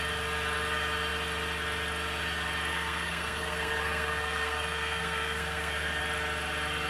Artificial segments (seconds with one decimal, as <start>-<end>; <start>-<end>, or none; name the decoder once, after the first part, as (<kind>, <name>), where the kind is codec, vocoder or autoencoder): 2.7-6.0 (codec, SNAC)